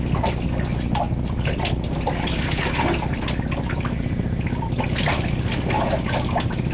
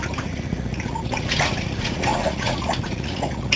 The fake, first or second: second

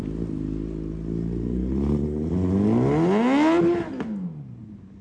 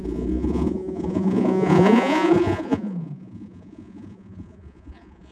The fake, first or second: second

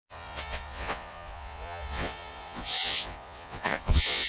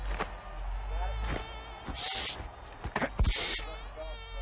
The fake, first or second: first